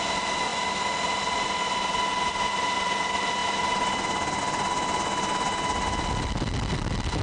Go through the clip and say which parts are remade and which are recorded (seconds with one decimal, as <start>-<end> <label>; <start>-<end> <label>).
0.0-7.2 recorded